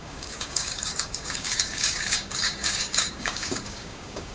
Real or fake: fake